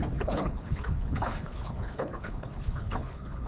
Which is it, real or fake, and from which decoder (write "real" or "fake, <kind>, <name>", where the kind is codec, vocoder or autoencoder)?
fake, codec, HILCodec